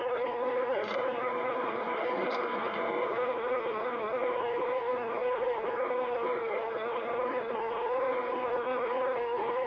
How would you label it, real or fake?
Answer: fake